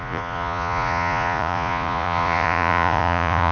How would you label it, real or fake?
fake